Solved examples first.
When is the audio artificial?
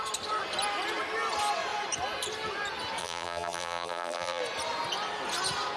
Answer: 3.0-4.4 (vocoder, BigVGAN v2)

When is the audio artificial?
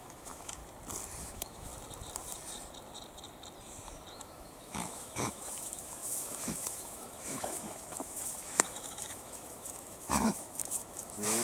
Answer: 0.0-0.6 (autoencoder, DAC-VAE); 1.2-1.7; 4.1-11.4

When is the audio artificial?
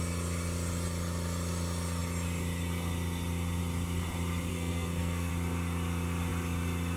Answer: 4.5-5.3 (codec, SNAC)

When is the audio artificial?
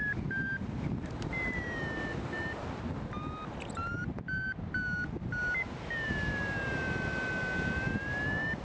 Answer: none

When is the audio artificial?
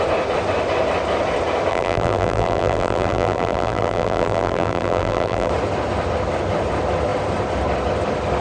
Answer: 1.7-5.5 (vocoder, BigVGAN v2)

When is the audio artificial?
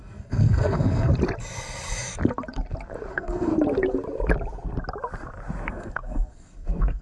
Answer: 0.0-1.1 (codec, SNAC); 3.1-3.5; 5.7-7.0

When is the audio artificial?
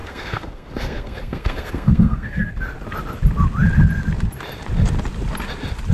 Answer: 0.0-2.5 (codec, SNAC)